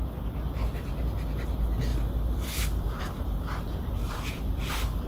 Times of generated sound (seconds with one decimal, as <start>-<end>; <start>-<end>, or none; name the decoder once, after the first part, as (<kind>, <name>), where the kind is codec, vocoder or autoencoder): 1.9-5.1 (vocoder, BigVGAN v2)